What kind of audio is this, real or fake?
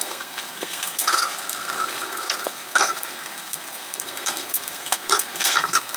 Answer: fake